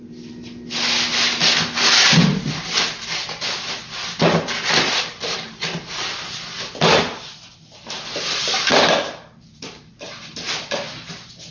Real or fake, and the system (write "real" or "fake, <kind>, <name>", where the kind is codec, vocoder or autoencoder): real